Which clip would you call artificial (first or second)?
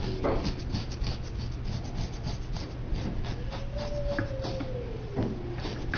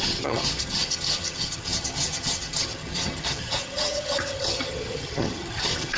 second